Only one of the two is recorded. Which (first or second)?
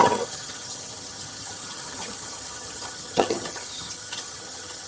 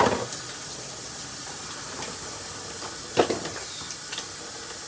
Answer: second